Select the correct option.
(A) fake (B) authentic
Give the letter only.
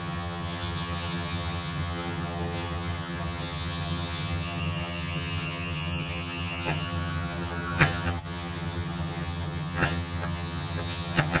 A